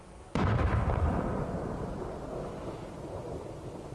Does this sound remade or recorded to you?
recorded